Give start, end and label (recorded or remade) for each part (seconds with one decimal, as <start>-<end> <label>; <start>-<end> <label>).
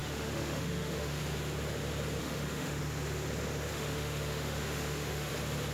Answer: 0.0-1.2 remade; 1.2-2.2 recorded; 2.2-2.8 remade; 2.8-3.7 recorded; 3.7-5.3 remade; 5.3-5.7 recorded